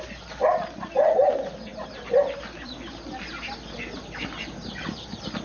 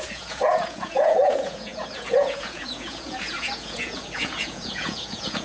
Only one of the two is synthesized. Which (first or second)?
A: second